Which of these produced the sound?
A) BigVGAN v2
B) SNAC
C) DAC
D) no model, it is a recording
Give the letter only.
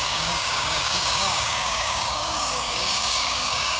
C